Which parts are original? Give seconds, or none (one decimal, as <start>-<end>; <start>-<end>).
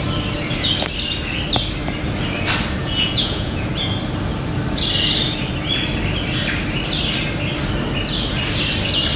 0.0-2.8; 3.7-9.2